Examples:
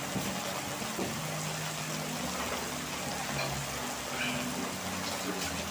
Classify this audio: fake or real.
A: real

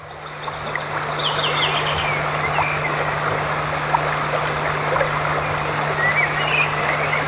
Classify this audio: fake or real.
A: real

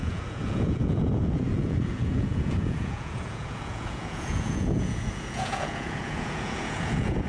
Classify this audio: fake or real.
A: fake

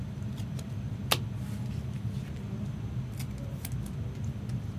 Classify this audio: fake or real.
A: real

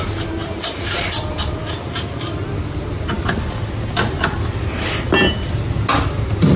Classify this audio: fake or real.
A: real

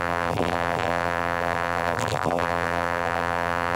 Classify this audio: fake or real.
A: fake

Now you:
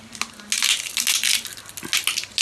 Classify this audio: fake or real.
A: real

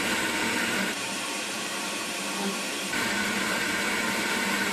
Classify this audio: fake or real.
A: fake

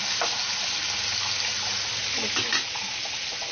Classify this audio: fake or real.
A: real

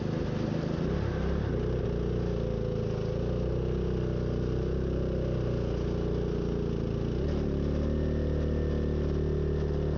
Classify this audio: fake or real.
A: real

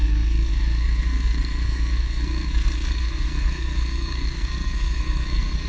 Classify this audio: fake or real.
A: fake